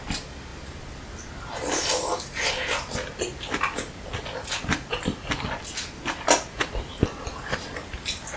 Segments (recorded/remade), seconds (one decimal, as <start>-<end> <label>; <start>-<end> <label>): 0.0-8.4 recorded